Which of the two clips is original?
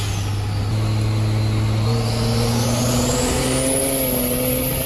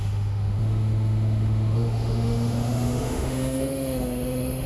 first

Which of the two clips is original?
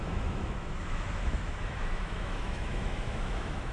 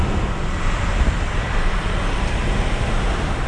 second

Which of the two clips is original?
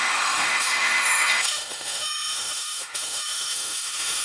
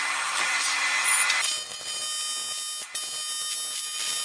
second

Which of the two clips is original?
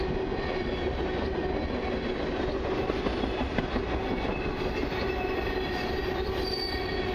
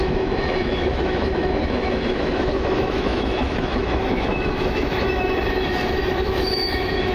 first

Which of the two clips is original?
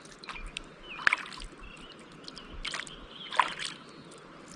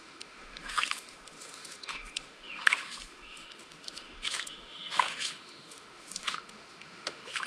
first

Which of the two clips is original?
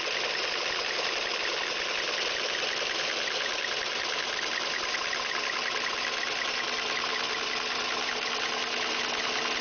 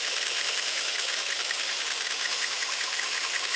first